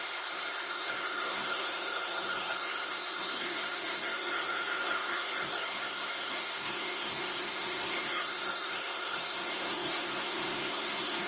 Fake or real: fake